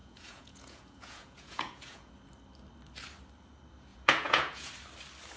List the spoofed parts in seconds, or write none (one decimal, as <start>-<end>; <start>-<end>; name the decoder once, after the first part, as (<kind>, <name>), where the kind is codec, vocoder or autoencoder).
0.0-2.1 (vocoder, Vocos); 3.9-4.7